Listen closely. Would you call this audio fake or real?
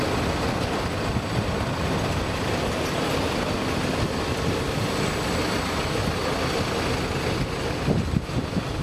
real